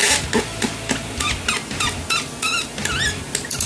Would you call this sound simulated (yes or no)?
no